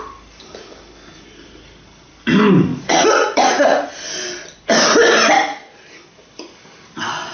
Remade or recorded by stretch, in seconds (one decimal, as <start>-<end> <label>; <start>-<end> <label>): 0.0-2.7 recorded; 2.7-3.9 remade; 3.9-7.3 recorded